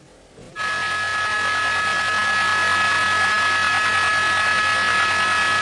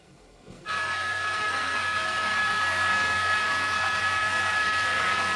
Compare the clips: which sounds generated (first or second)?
second